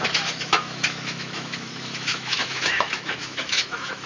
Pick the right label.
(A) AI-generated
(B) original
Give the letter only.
A